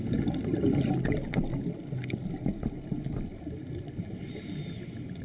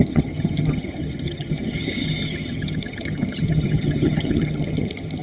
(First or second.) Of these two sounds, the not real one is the second